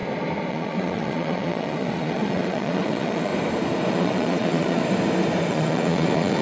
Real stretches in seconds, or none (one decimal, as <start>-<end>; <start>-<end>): 0.0-0.5; 3.3-3.9; 4.8-5.5